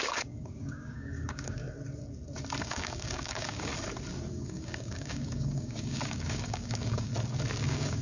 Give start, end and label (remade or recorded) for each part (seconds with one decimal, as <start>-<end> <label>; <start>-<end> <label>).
0.0-1.6 remade; 1.6-2.6 recorded; 2.6-3.7 remade; 3.7-4.3 recorded; 4.3-7.1 remade; 7.1-7.6 recorded; 7.6-8.0 remade